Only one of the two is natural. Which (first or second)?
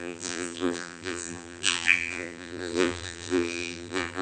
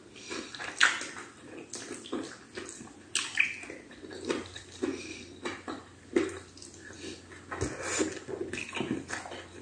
second